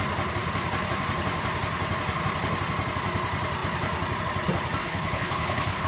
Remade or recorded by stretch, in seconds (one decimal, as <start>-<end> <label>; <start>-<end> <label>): 0.0-4.8 recorded; 4.8-5.9 remade